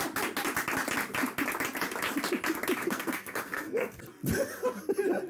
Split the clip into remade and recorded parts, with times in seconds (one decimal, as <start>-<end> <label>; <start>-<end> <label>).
0.0-2.8 recorded; 2.8-4.0 remade; 4.0-5.3 recorded